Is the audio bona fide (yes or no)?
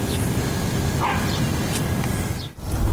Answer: no